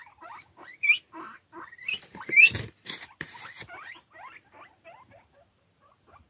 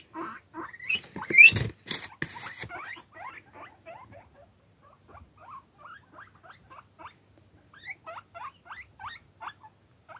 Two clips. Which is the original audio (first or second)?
second